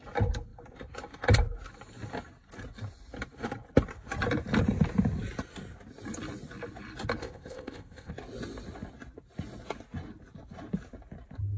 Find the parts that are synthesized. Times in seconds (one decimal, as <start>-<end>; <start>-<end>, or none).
7.2-8.1